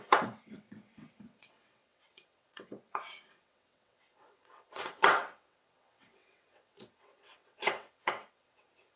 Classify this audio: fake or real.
fake